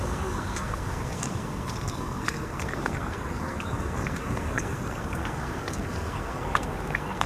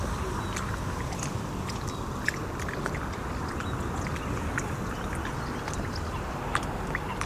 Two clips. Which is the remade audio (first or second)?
first